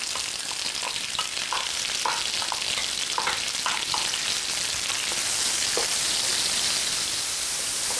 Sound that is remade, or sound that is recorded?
recorded